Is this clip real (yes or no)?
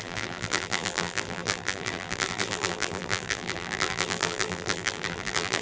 no